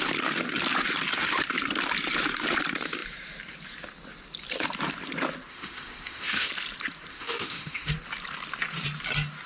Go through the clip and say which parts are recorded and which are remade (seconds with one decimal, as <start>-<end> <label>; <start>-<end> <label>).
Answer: 0.0-5.5 recorded; 5.5-6.5 remade; 6.5-7.1 recorded; 7.1-7.9 remade; 7.9-9.5 recorded

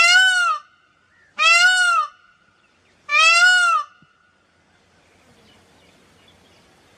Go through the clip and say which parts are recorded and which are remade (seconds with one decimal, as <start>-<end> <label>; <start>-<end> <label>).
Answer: 0.0-7.0 recorded

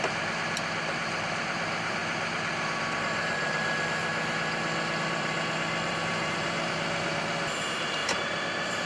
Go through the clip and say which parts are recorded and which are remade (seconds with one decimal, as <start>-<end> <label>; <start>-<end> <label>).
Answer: 0.0-2.0 remade; 2.0-2.9 recorded; 2.9-4.0 remade; 4.0-5.0 recorded; 5.0-8.9 remade